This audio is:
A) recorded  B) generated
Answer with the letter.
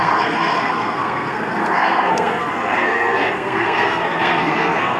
B